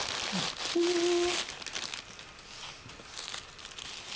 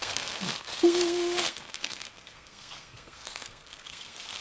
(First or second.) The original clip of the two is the first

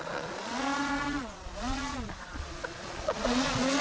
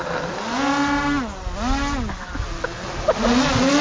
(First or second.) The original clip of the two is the second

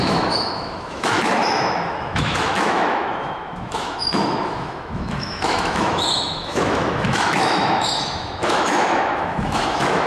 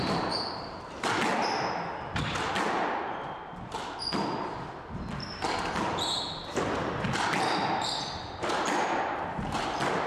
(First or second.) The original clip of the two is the second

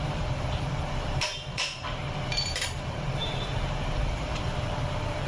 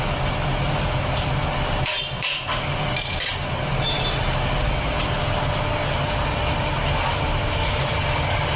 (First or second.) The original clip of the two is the second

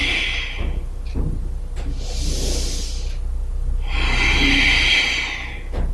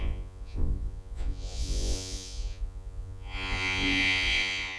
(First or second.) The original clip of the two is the first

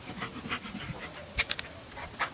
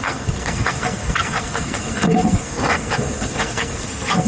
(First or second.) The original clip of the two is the first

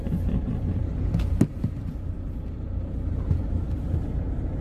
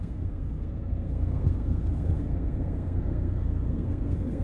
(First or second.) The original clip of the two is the first